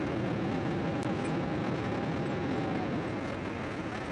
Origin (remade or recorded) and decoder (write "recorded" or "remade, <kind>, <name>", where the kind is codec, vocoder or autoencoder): recorded